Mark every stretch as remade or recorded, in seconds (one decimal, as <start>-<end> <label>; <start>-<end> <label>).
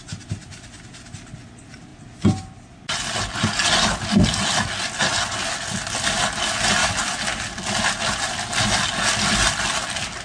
0.0-10.2 recorded